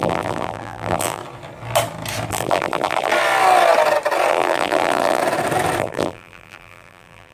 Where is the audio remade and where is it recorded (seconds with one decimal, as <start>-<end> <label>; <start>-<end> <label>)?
0.0-1.2 remade; 1.2-2.3 recorded; 2.3-3.1 remade; 3.1-4.3 recorded; 4.3-5.2 remade; 5.2-5.8 recorded; 5.8-7.3 remade

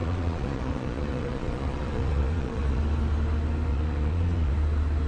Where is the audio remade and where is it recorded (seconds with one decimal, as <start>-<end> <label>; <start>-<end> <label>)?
0.0-2.8 remade; 2.8-3.7 recorded; 3.7-4.5 remade; 4.5-5.1 recorded

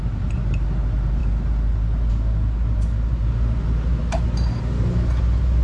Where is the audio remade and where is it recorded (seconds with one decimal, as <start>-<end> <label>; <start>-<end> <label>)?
0.0-5.6 recorded

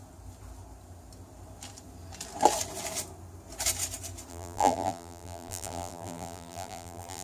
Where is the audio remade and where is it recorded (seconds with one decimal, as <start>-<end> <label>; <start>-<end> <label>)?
0.0-4.3 recorded; 4.3-7.2 remade